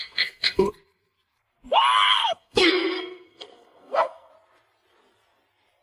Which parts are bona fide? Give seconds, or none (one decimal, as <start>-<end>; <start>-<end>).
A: 0.7-2.2; 4.3-5.8